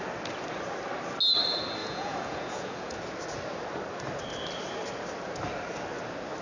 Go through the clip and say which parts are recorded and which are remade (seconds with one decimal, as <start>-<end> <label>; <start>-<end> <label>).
0.0-1.8 recorded; 1.8-3.0 remade; 3.0-6.4 recorded